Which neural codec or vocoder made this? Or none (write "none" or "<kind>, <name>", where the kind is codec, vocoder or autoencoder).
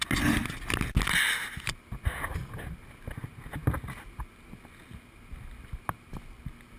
none